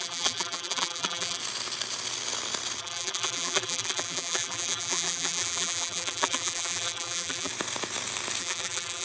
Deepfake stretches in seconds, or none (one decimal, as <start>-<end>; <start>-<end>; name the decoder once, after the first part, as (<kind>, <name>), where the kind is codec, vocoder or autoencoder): 0.0-1.4 (vocoder, BigVGAN v2); 2.8-7.5; 8.4-9.0